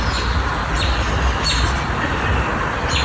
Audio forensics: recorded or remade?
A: recorded